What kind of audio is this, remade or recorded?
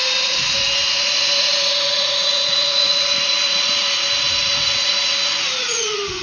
remade